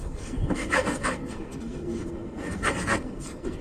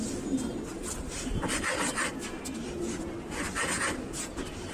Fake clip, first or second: first